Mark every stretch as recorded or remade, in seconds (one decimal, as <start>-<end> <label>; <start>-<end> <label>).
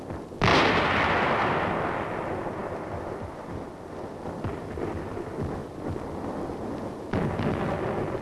0.0-5.6 recorded; 5.6-8.2 remade